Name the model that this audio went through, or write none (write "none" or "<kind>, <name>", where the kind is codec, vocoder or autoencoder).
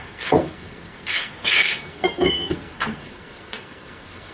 codec, SNAC